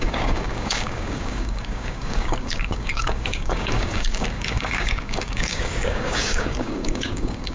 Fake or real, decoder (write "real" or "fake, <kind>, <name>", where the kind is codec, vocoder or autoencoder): fake, codec, DAC